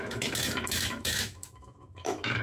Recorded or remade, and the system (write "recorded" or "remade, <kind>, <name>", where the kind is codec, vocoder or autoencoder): remade, autoencoder, DAC-VAE